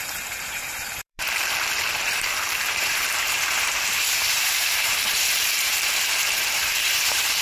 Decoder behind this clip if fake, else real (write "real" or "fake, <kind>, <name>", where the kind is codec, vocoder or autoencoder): fake, vocoder, BigVGAN v2